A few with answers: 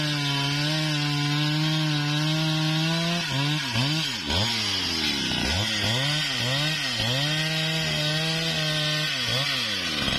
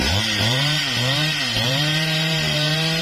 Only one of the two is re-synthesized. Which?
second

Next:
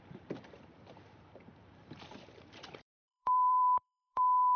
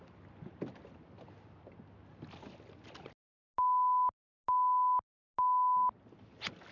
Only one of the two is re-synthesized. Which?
first